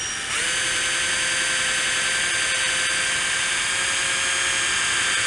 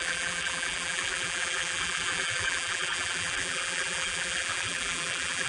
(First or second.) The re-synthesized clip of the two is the second